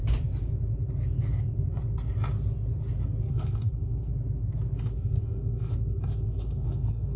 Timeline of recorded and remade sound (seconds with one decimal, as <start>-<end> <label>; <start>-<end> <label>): 0.0-3.2 recorded; 3.2-4.1 remade; 4.1-4.8 recorded; 4.8-7.2 remade